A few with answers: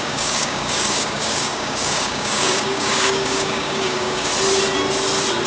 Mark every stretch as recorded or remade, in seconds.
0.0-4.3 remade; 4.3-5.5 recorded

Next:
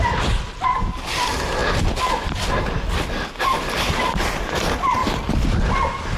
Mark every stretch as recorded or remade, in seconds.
0.0-6.2 recorded

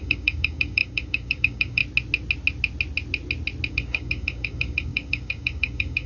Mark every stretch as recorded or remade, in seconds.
0.0-1.8 remade; 1.8-3.7 recorded; 3.7-6.1 remade